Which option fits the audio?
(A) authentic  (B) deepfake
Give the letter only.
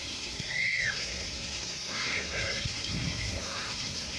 B